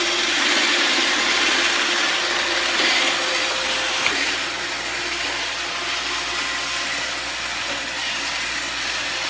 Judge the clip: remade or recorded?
recorded